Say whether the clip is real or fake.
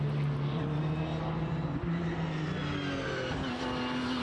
real